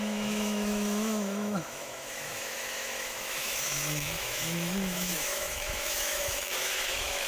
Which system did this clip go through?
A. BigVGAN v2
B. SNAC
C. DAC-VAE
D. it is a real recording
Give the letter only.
C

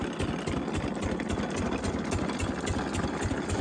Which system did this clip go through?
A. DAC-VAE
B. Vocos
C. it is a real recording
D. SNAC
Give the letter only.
C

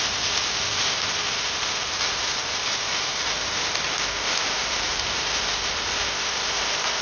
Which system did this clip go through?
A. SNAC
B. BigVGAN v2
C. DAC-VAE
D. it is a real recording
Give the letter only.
D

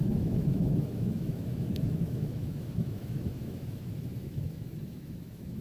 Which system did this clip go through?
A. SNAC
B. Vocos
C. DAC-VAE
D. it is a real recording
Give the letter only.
C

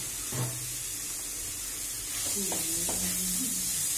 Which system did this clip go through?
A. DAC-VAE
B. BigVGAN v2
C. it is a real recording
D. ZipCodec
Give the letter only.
C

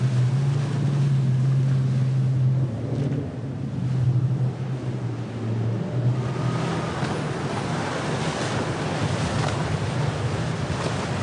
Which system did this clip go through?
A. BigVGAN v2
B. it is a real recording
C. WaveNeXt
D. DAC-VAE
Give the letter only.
B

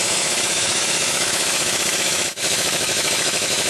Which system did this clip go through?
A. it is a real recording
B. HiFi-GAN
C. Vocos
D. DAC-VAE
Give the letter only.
D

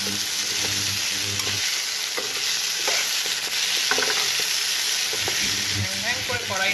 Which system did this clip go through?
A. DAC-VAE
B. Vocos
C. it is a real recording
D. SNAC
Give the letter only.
C